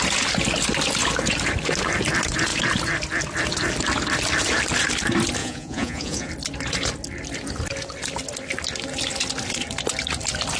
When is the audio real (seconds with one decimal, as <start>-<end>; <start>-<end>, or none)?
0.0-5.4; 6.3-10.6